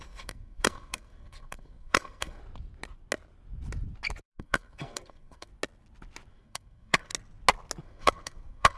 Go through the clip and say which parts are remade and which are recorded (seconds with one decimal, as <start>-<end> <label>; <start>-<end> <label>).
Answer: 0.0-2.4 remade; 2.4-4.2 recorded; 4.2-5.5 remade; 5.5-6.3 recorded; 6.3-7.1 remade; 7.1-7.8 recorded; 7.8-8.8 remade